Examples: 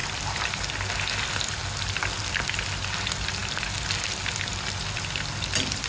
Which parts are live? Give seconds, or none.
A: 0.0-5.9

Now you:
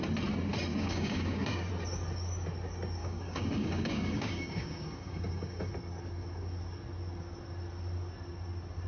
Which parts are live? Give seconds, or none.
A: 0.0-0.7; 1.7-3.0; 5.7-8.9